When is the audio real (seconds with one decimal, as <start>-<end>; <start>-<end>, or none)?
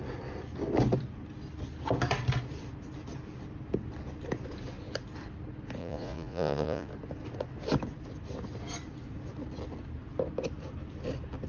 0.0-5.8; 6.9-11.5